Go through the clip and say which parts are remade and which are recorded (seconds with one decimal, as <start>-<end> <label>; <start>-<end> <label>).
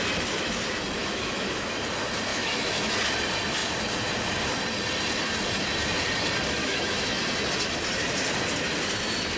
0.0-1.0 recorded; 1.0-1.7 remade; 1.7-2.3 recorded; 2.3-2.9 remade; 2.9-6.6 recorded; 6.6-7.2 remade; 7.2-9.4 recorded